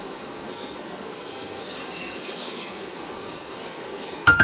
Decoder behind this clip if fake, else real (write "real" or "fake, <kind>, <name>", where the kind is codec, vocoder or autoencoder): fake, codec, SNAC